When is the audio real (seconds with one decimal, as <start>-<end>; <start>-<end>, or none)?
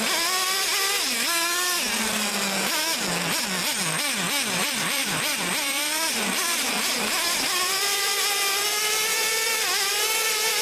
0.0-4.6; 8.2-10.6